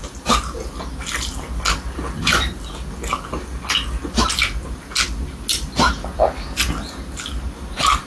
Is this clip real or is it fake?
real